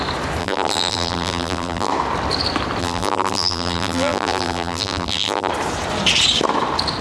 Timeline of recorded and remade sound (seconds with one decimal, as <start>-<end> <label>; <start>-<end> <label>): 0.0-0.4 recorded; 0.4-1.9 remade; 1.9-2.8 recorded; 2.8-5.5 remade; 5.5-7.0 recorded